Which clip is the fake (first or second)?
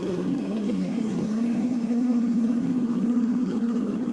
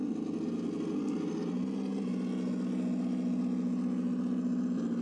first